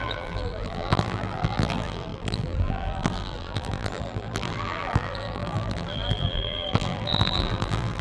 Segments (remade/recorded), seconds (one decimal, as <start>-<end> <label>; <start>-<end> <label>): 0.0-8.0 remade

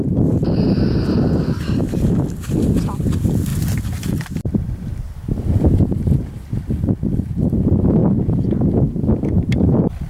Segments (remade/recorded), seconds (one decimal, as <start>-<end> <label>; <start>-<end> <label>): 0.0-8.0 remade; 8.0-9.0 recorded; 9.0-10.1 remade

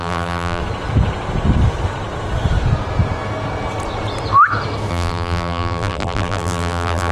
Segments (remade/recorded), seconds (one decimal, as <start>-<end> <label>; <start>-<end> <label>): 0.0-0.6 remade; 0.6-4.9 recorded; 4.9-7.1 remade

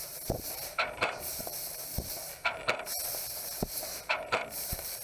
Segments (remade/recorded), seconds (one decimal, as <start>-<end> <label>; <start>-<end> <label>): 0.0-5.0 remade

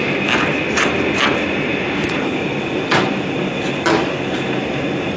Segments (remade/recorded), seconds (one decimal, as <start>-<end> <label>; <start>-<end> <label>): 0.0-1.7 recorded; 1.7-4.8 remade; 4.8-5.2 recorded